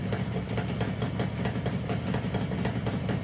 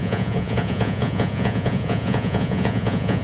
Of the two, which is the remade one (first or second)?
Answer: second